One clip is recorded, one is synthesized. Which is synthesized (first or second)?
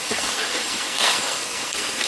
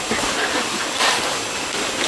first